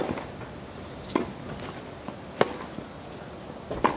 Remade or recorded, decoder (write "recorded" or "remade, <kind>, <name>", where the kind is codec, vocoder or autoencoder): recorded